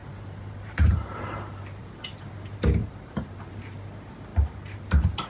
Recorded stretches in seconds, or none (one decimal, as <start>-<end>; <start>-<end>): 1.9-2.8; 3.5-4.3

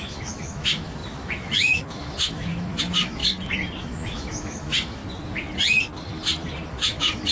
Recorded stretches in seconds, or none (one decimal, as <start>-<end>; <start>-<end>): 3.2-3.8; 5.0-6.7

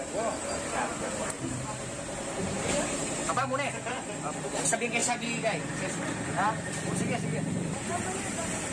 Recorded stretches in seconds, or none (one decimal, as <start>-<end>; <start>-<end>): 0.0-0.4; 3.4-7.3

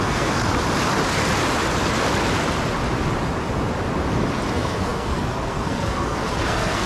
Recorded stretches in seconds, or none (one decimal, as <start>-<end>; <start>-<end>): 0.4-4.5